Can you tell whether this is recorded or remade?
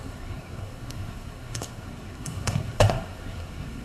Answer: remade